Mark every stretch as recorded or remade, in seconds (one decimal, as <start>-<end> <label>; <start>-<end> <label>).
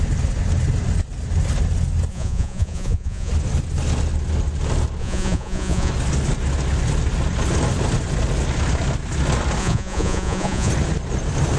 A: 0.0-2.1 recorded; 2.1-3.3 remade; 3.3-5.0 recorded; 5.0-5.9 remade; 5.9-9.6 recorded; 9.6-10.7 remade; 10.7-11.6 recorded